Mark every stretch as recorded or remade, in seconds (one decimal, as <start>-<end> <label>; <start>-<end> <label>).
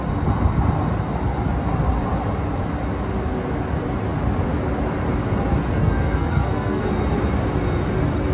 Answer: 0.0-5.8 recorded; 5.8-6.8 remade; 6.8-8.3 recorded